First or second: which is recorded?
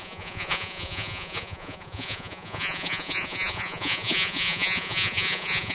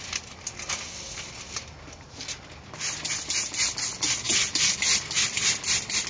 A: second